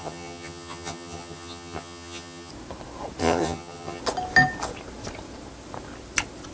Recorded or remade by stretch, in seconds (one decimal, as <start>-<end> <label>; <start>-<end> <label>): 0.0-2.5 remade; 2.5-3.2 recorded; 3.2-4.0 remade; 4.0-6.5 recorded

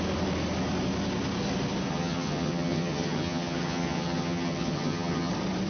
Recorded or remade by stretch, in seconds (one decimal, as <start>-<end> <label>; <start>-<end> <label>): 0.0-1.9 recorded; 1.9-5.3 remade; 5.3-5.7 recorded